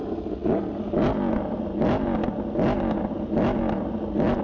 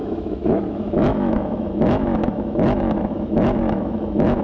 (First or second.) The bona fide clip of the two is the first